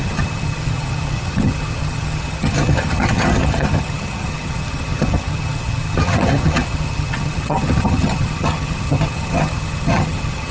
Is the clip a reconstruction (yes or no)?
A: yes